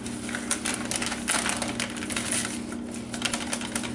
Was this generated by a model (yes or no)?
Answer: no